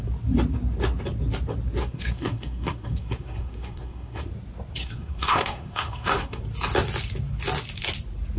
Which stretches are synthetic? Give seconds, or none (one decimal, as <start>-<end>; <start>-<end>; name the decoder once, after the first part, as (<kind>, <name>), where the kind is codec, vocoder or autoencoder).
1.8-4.3 (codec, SNAC); 4.8-6.4